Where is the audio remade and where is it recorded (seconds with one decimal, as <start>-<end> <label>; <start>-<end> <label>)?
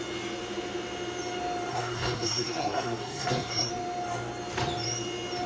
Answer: 0.0-1.7 recorded; 1.7-3.7 remade; 3.7-5.5 recorded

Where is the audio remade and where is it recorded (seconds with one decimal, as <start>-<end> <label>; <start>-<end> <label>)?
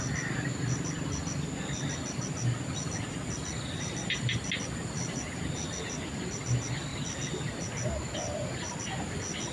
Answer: 0.0-9.5 recorded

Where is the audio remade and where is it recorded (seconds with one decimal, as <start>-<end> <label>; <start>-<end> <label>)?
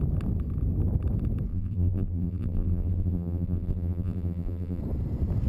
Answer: 0.0-1.5 recorded; 1.5-4.8 remade; 4.8-5.5 recorded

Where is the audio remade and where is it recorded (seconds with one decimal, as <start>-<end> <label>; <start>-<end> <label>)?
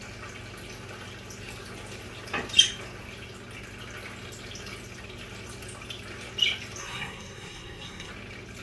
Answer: 0.0-6.8 recorded; 6.8-8.1 remade; 8.1-8.6 recorded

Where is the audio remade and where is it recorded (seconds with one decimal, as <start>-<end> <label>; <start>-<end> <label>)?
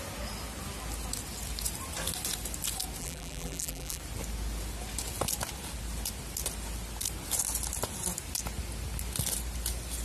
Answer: 0.0-3.0 recorded; 3.0-4.0 remade; 4.0-10.0 recorded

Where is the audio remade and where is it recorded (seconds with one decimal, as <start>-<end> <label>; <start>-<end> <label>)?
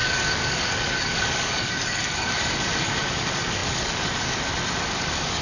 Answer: 0.0-4.5 remade; 4.5-5.0 recorded; 5.0-5.4 remade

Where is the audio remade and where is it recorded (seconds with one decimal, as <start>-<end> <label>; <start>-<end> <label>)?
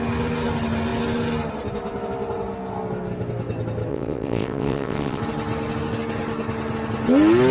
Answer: 0.0-3.9 recorded; 3.9-5.2 remade; 5.2-7.5 recorded